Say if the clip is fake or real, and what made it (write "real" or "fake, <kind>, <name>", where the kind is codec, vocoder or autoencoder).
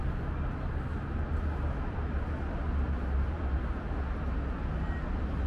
real